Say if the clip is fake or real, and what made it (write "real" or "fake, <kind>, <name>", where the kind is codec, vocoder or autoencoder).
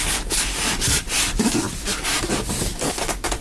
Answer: fake, codec, DAC